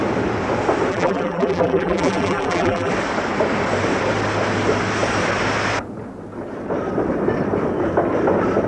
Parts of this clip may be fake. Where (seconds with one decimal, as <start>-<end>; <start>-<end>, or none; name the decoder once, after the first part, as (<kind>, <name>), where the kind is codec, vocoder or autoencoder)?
0.9-2.9 (vocoder, BigVGAN v2)